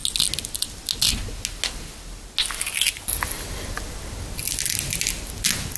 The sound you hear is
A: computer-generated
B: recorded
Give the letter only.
B